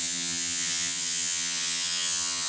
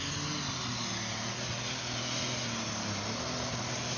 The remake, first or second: first